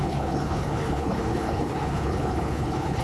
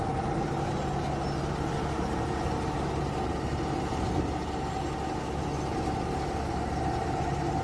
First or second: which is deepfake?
first